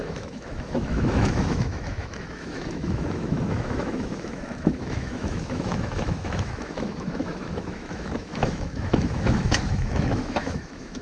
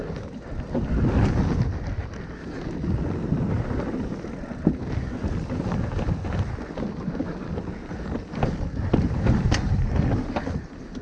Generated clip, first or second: first